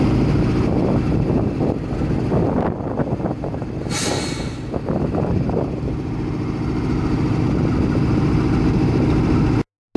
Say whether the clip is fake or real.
real